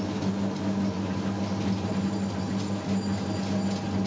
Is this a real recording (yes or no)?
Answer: yes